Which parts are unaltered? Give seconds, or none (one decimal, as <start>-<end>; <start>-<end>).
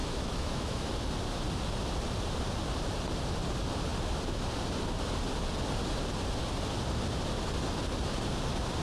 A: 0.9-8.8